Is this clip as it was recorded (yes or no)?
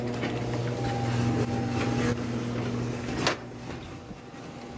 yes